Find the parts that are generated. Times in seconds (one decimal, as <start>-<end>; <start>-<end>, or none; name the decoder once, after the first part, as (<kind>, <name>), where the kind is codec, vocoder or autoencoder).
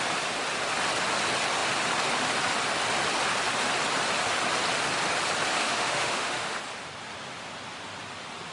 5.6-6.6 (autoencoder, DAC-VAE)